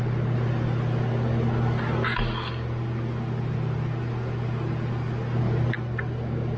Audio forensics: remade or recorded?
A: recorded